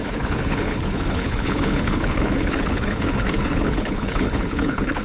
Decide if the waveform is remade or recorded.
remade